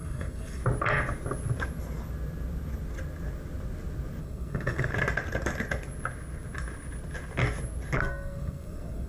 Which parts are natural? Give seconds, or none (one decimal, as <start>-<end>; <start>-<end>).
0.6-4.2; 4.9-8.0